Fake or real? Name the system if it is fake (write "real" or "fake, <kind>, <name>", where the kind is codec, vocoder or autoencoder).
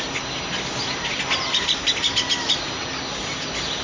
real